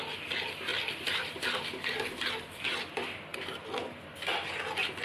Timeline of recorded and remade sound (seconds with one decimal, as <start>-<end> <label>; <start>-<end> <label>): 0.0-0.7 recorded; 0.7-2.5 remade; 2.5-3.3 recorded; 3.3-5.0 remade